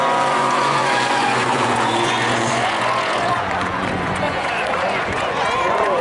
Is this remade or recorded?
remade